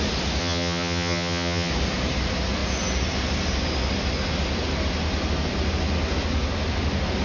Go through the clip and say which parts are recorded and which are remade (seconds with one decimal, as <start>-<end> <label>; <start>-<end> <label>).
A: 0.0-0.4 recorded; 0.4-1.7 remade; 1.7-7.2 recorded